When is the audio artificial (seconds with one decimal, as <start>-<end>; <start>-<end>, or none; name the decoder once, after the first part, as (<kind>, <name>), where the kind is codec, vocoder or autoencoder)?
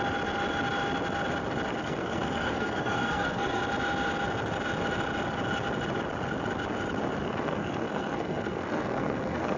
1.7-3.6 (codec, SNAC); 7.2-9.6